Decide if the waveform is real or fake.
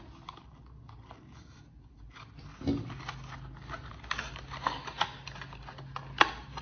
real